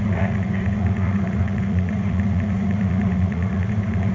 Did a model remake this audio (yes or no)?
yes